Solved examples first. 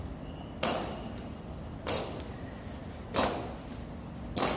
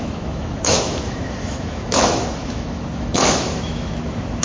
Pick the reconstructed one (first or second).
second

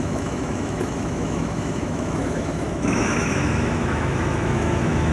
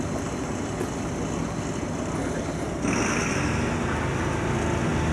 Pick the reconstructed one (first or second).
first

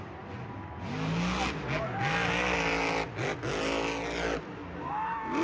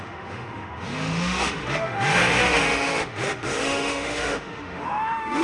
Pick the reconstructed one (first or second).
second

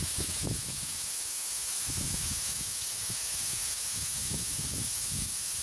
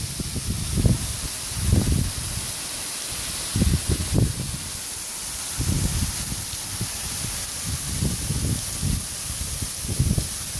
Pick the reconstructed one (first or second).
first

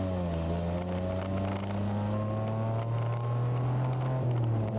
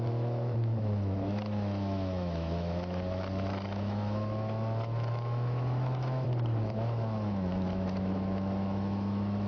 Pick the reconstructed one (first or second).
second